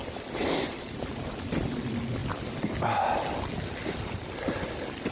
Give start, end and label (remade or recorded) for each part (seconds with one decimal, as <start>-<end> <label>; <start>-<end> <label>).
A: 0.0-5.1 recorded